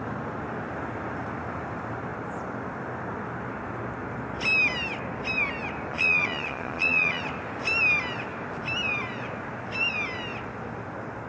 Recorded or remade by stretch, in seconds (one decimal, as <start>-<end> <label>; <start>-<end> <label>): 0.0-5.9 recorded; 5.9-7.2 remade; 7.2-11.3 recorded